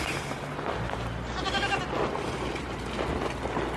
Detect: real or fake real